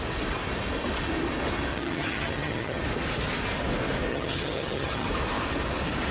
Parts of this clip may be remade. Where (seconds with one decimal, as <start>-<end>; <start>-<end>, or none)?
1.7-2.8; 4.1-5.1